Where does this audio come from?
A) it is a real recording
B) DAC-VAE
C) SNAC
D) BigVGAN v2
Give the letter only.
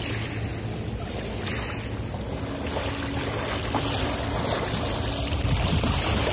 A